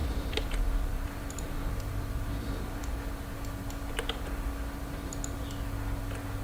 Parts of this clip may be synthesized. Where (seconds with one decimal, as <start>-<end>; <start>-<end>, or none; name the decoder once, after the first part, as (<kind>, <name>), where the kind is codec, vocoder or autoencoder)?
0.0-3.0 (vocoder, BigVGAN v2)